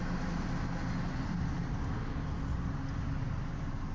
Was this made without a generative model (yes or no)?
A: yes